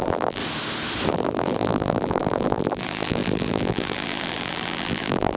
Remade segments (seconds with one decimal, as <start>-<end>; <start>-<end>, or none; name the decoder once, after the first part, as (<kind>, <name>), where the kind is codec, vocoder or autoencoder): 0.0-0.4 (vocoder, BigVGAN v2); 1.1-5.4